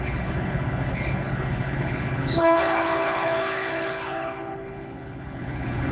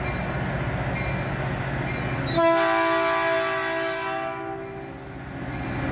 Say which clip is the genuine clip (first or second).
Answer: second